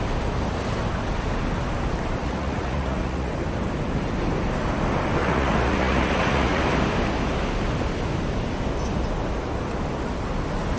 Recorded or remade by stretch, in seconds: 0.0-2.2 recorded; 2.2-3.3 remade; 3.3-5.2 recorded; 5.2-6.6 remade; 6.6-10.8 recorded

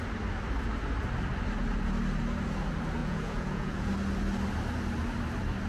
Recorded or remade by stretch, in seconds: 0.0-3.0 recorded; 3.0-3.9 remade; 3.9-5.7 recorded

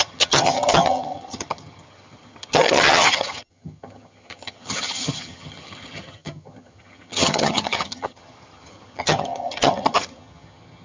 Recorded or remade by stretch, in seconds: 0.0-10.8 remade

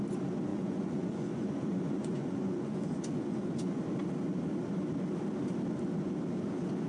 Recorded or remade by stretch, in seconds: 0.0-0.5 recorded; 0.5-3.8 remade; 3.8-6.9 recorded

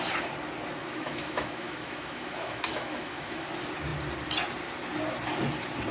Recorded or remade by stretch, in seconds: 0.0-0.8 recorded; 0.8-3.5 remade; 3.5-5.9 recorded

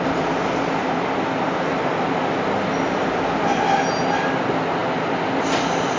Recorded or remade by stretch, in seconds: 0.0-6.0 recorded

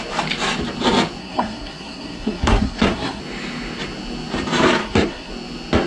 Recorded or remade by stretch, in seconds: 0.0-1.2 recorded; 1.2-3.2 remade; 3.2-4.8 recorded; 4.8-5.3 remade; 5.3-5.9 recorded